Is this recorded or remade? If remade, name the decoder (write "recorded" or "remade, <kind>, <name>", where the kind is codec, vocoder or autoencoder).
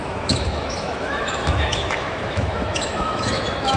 remade, autoencoder, DAC-VAE